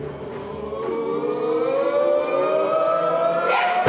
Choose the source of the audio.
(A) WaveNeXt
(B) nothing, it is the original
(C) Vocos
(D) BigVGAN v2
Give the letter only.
B